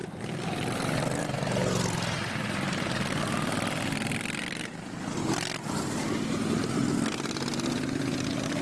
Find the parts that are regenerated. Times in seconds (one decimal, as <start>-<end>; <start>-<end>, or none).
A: none